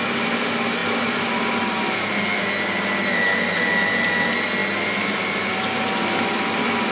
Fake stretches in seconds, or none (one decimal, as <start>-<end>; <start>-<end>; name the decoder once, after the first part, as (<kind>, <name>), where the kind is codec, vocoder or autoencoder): none